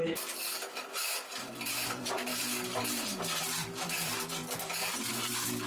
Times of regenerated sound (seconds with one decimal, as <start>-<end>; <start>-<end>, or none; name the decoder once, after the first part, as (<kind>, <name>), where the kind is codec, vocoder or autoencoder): 0.0-2.3 (vocoder, BigVGAN v2); 3.4-5.7